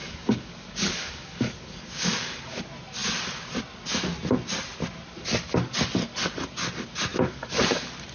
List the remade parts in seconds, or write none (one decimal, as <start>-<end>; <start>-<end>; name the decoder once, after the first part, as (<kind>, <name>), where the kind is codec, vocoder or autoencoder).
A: 0.0-2.6 (codec, DAC); 7.1-7.6